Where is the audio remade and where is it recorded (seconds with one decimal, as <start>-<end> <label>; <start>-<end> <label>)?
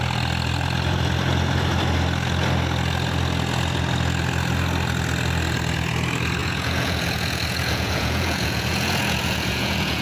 0.0-6.4 recorded; 6.4-10.0 remade